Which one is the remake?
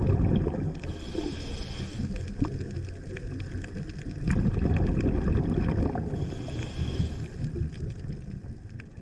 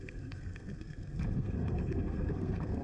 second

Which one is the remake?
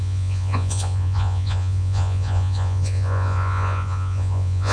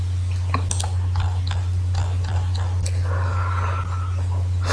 first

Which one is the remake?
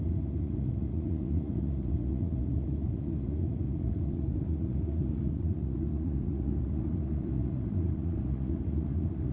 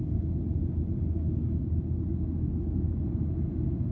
first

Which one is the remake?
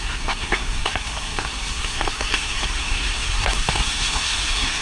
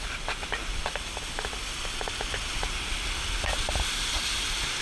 first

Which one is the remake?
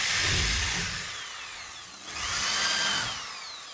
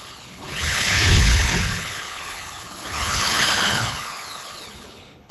second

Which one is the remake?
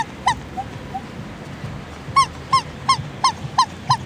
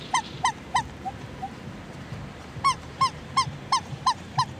second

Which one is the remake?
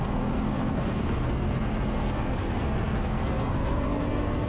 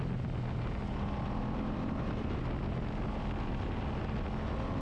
first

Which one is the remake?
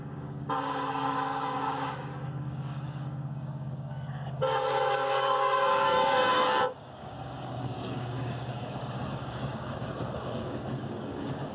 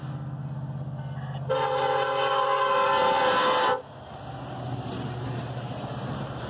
first